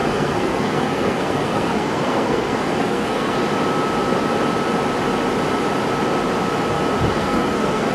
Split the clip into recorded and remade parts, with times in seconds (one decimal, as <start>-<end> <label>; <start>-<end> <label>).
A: 0.0-3.4 remade; 3.4-7.1 recorded; 7.1-7.9 remade